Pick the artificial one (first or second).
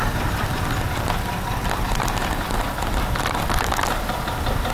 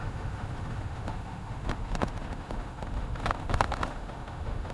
second